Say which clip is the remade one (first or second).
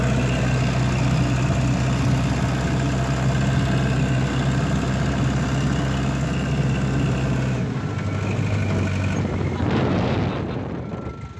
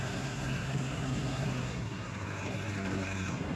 second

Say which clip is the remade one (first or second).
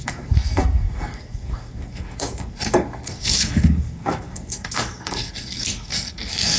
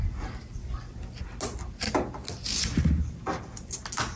first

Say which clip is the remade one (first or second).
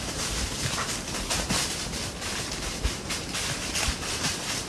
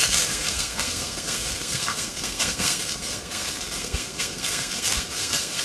second